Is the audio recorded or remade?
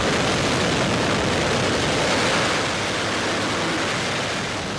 recorded